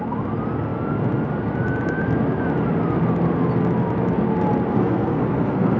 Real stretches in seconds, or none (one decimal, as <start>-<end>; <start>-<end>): 0.0-4.7